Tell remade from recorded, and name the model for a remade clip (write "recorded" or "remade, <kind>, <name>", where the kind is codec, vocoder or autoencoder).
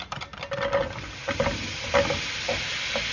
recorded